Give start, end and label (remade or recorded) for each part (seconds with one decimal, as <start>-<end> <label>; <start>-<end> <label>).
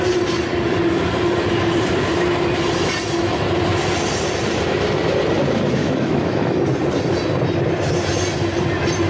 0.0-5.8 recorded; 5.8-6.5 remade; 6.5-9.1 recorded